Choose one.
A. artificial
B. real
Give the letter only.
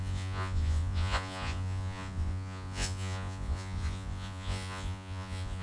A